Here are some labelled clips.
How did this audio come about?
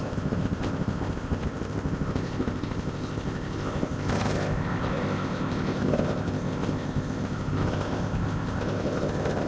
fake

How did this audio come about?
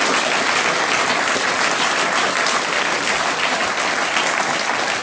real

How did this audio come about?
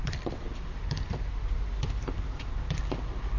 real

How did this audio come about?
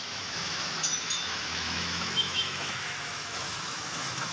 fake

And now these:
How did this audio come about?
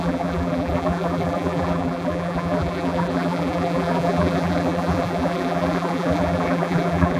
fake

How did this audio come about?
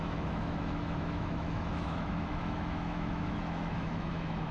fake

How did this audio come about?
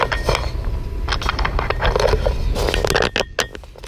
real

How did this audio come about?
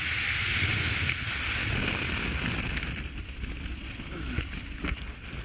real